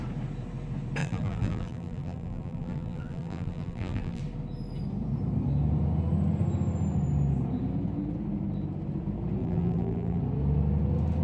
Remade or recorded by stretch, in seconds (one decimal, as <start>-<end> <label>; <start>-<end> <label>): 0.0-1.0 recorded; 1.0-4.2 remade; 4.2-9.4 recorded; 9.4-10.2 remade; 10.2-11.2 recorded